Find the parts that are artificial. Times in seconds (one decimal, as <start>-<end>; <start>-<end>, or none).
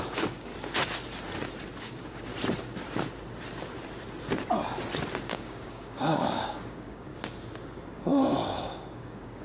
0.0-0.5; 1.8-2.3; 5.3-7.1; 8.0-9.4